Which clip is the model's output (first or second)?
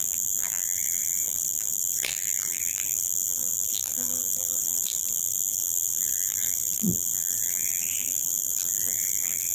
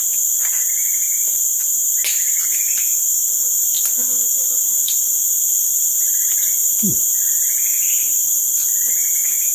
first